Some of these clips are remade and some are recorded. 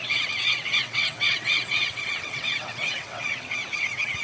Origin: remade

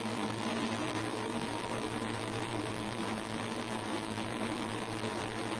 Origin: remade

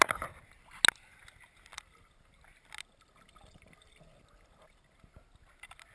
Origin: recorded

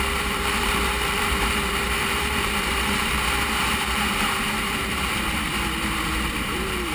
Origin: remade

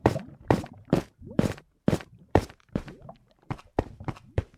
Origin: remade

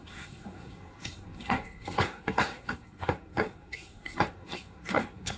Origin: remade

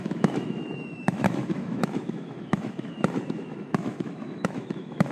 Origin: remade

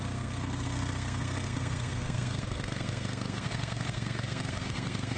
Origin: remade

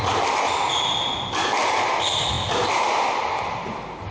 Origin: recorded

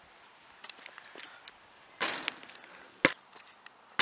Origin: recorded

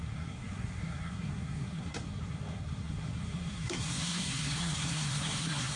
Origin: remade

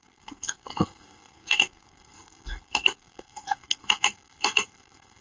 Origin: remade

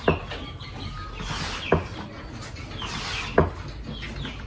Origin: recorded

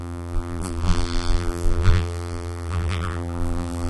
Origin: remade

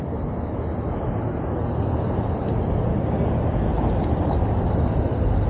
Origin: recorded